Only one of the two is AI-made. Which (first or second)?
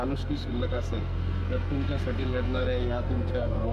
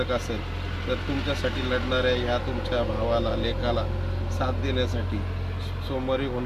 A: first